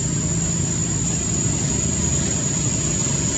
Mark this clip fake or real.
real